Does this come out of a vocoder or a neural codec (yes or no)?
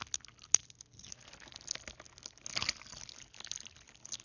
no